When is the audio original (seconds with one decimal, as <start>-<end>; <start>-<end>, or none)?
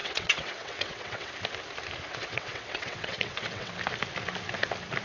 1.3-2.1; 3.7-5.0